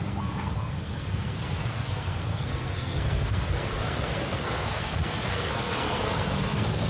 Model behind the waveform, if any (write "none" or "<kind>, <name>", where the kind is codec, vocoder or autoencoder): codec, SNAC